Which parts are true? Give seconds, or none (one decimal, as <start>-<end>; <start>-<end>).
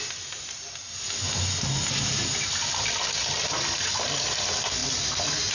0.0-5.5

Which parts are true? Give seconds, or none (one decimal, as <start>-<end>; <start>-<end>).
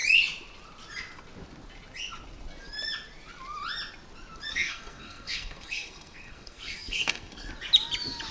0.0-4.5; 7.5-8.3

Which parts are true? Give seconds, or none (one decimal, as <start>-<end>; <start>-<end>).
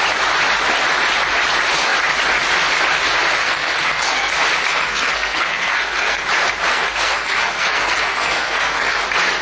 0.0-3.4; 4.3-4.7; 6.2-6.7; 9.0-9.4